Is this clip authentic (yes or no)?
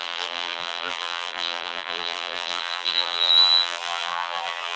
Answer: no